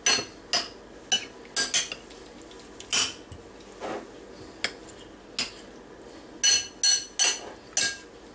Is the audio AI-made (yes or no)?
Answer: no